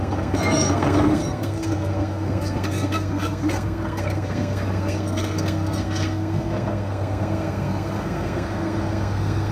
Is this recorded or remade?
remade